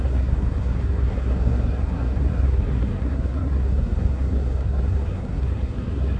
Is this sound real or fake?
fake